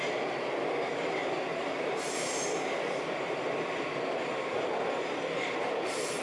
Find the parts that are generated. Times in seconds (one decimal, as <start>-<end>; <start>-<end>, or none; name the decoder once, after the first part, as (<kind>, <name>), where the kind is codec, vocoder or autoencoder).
1.2-2.9 (vocoder, BigVGAN v2)